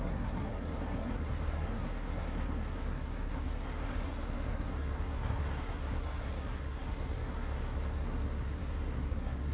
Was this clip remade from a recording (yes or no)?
yes